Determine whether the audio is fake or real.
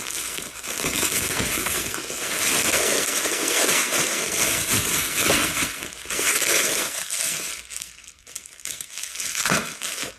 fake